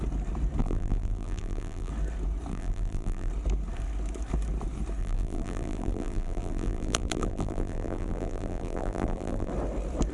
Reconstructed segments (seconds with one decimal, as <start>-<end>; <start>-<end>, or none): 0.6-1.9; 2.5-3.3; 5.0-9.5